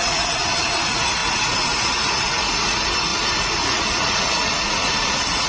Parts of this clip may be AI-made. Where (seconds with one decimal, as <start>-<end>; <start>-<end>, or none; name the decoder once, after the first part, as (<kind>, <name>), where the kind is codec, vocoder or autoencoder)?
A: 0.0-5.5 (vocoder, Vocos)

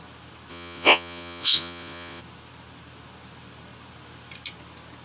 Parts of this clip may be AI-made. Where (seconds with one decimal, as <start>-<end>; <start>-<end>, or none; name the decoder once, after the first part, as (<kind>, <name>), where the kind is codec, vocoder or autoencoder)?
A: 0.5-2.2 (vocoder, Vocos)